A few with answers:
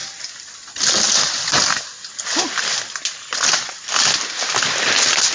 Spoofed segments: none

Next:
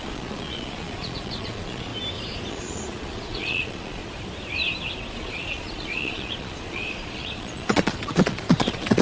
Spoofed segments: 0.0-1.9 (vocoder, Vocos); 2.5-4.0; 5.1-9.0

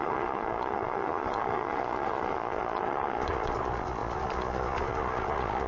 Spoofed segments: 0.0-5.7 (vocoder, Vocos)

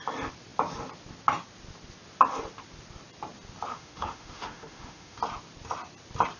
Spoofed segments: 3.7-5.2 (autoencoder, DAC-VAE)

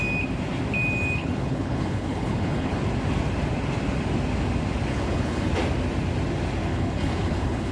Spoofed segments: 1.2-2.8 (codec, HILCodec); 4.9-5.5; 6.7-7.7

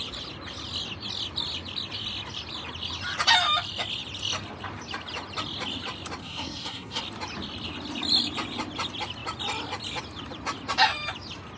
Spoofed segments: 6.2-7.0 (codec, SNAC)

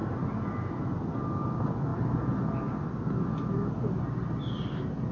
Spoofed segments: none